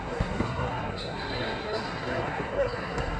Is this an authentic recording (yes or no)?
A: no